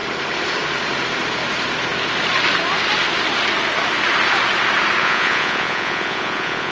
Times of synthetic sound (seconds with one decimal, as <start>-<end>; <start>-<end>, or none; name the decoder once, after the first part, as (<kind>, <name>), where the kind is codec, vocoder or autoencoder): 5.0-6.7 (vocoder, Vocos)